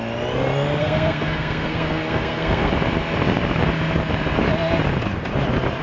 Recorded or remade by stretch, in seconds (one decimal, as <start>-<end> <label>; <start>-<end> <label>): 0.0-0.8 recorded; 0.8-2.7 remade; 2.7-5.8 recorded